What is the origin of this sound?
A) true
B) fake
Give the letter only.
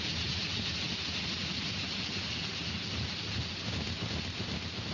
A